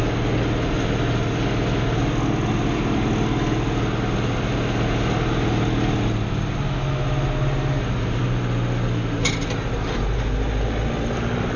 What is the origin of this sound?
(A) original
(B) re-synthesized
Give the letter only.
A